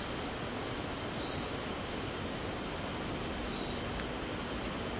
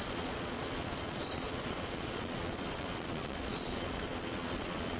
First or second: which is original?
first